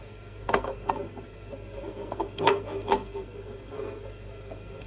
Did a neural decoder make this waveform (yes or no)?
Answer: yes